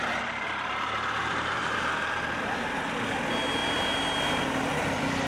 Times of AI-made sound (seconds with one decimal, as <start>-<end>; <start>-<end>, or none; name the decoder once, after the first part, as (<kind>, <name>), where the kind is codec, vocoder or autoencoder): 1.2-1.9 (vocoder, BigVGAN v2); 3.6-4.8